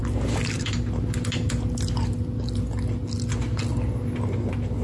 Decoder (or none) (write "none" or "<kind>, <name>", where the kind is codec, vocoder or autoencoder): none